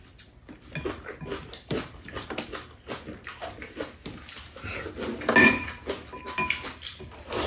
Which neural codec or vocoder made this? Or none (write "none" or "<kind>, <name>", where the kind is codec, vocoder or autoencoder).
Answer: none